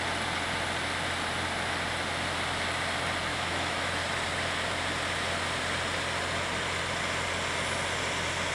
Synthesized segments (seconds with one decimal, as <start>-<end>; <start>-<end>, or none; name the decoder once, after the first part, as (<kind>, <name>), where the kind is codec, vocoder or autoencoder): 3.3-3.9 (autoencoder, DAC-VAE)